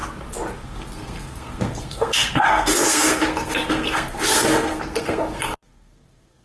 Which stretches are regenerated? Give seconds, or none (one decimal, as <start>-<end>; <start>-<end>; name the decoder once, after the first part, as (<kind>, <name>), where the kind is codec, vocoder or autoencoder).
0.6-6.4 (codec, SNAC)